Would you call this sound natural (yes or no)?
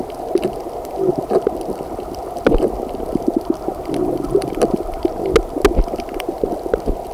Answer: yes